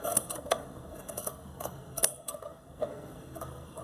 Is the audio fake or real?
fake